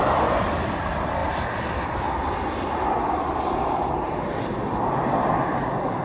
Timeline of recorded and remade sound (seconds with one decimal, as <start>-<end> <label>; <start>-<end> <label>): 0.0-1.2 recorded; 1.2-4.8 remade; 4.8-6.0 recorded